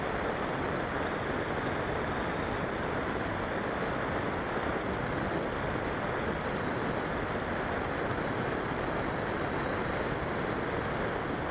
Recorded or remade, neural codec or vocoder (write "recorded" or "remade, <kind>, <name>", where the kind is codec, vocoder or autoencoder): recorded